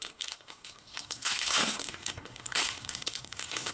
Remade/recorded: remade